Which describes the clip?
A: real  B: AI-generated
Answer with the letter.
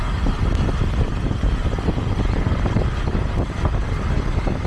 A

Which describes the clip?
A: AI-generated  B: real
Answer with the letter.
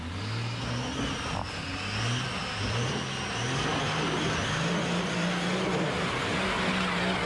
B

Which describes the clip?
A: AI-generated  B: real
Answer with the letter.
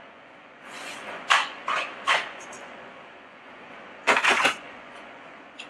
A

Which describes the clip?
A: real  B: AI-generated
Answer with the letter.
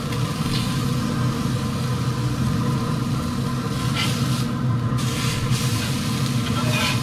A